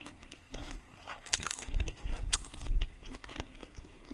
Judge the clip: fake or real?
fake